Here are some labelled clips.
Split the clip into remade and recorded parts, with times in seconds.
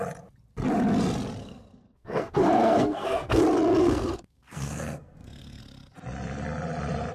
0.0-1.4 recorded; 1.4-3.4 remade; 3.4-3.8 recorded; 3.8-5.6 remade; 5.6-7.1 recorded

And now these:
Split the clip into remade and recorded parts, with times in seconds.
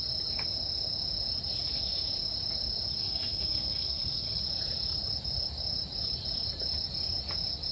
0.0-3.0 recorded; 3.0-4.4 remade; 4.4-7.7 recorded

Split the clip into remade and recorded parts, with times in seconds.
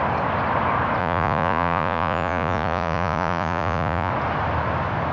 0.0-1.0 recorded; 1.0-4.1 remade; 4.1-5.1 recorded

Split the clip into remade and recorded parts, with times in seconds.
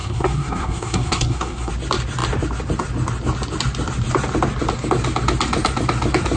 0.0-1.7 remade; 1.7-6.4 recorded